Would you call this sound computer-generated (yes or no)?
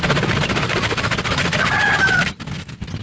no